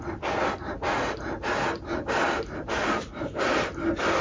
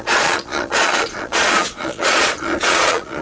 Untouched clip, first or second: first